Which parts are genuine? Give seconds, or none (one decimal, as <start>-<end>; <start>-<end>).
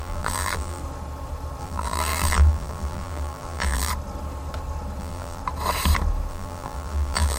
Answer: 0.8-1.6; 3.9-5.0; 5.4-6.3